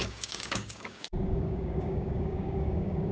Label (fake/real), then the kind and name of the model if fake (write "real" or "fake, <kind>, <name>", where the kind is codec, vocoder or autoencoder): fake, codec, DAC